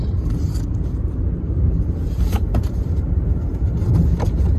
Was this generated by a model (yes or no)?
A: yes